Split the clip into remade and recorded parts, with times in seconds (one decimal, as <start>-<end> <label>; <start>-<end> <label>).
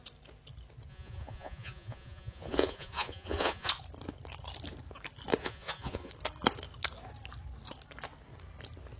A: 0.0-0.9 recorded; 0.9-3.7 remade; 3.7-5.4 recorded; 5.4-6.1 remade; 6.1-9.0 recorded